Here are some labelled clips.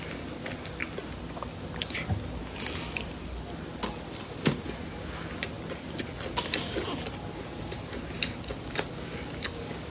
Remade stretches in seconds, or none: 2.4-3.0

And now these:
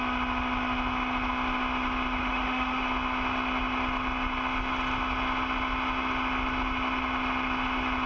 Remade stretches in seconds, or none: 2.2-2.8

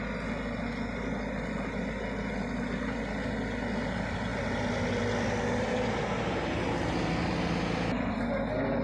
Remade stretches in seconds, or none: none

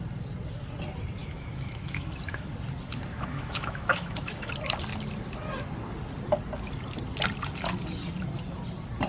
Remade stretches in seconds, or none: 1.2-2.5; 3.1-4.5